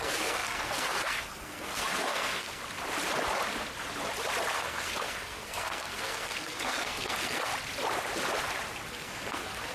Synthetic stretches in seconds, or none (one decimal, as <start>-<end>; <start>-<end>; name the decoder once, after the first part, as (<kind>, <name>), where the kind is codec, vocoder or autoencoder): 0.0-2.6 (codec, SNAC); 4.5-7.5; 8.9-9.7